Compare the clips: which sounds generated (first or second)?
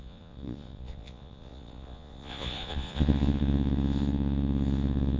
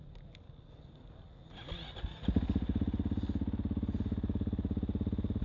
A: first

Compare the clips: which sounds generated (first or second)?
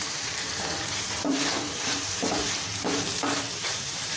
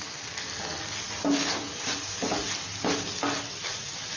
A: first